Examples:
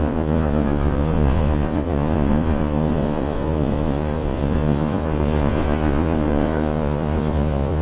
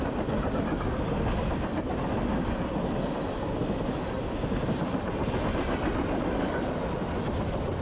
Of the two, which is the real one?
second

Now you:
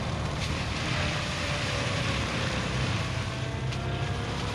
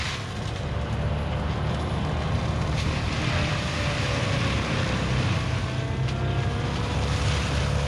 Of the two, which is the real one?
second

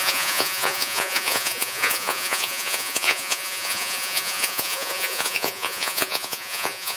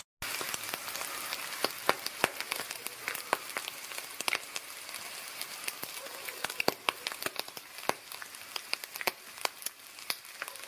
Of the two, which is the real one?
second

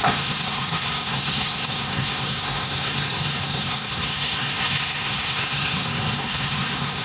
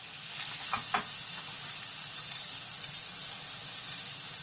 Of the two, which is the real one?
second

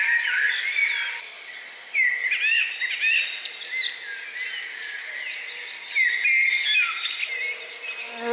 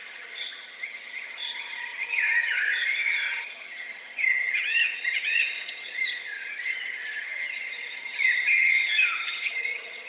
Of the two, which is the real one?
first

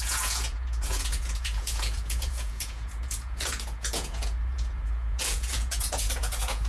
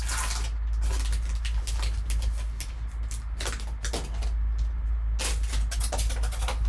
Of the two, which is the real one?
second